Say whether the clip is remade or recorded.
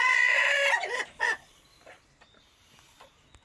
recorded